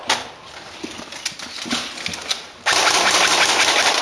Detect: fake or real real